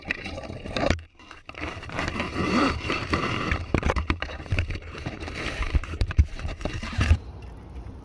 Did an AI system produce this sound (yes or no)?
yes